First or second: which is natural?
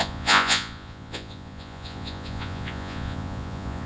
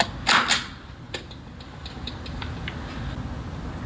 second